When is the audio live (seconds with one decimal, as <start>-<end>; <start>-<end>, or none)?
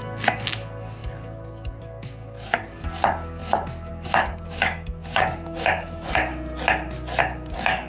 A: 6.3-7.2